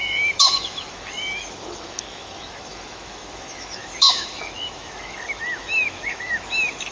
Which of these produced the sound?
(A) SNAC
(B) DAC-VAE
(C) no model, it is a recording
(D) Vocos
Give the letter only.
B